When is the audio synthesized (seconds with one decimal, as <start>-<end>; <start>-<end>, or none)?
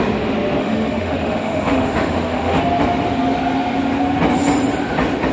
0.6-2.6